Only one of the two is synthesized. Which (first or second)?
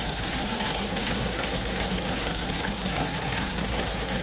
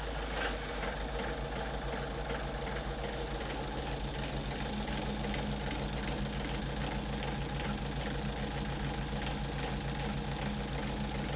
first